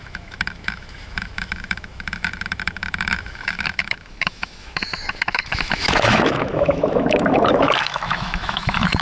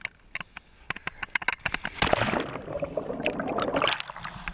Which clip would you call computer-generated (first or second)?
first